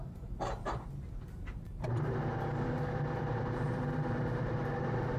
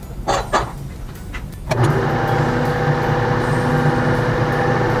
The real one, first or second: second